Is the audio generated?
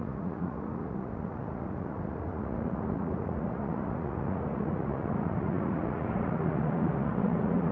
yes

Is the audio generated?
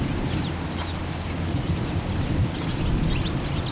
no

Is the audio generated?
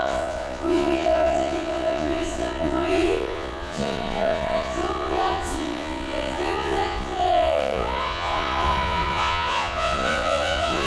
yes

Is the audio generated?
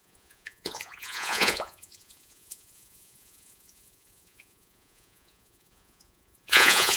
yes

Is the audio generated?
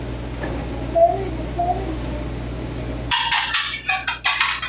no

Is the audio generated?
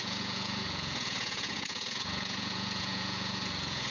yes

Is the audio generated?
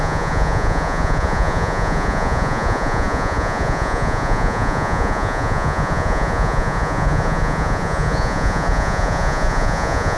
yes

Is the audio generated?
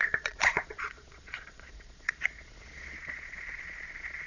yes